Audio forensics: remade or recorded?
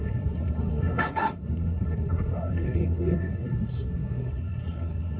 remade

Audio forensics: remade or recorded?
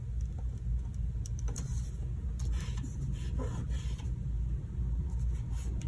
recorded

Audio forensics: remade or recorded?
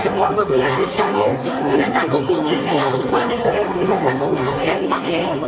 remade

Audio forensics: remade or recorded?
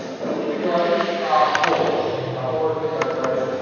recorded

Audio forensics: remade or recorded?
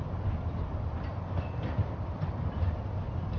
remade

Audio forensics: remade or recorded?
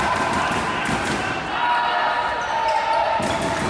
recorded